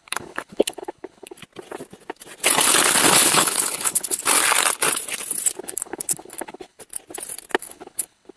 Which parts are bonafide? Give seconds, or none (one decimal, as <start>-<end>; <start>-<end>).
1.4-3.1; 4.2-5.6; 6.8-7.6